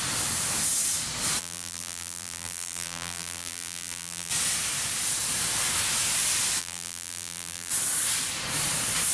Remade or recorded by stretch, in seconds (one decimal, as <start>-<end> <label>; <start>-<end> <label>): 0.0-1.4 recorded; 1.4-4.3 remade; 4.3-6.6 recorded; 6.6-7.7 remade; 7.7-9.1 recorded